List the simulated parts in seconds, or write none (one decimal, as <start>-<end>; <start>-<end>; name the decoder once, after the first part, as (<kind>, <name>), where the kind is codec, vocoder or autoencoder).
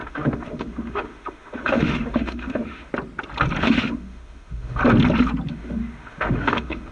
0.0-2.9 (autoencoder, DAC-VAE); 3.6-4.8; 5.5-6.9